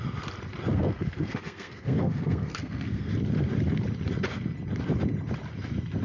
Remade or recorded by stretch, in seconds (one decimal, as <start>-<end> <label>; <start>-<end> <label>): 0.0-0.7 recorded; 0.7-3.1 remade; 3.1-6.0 recorded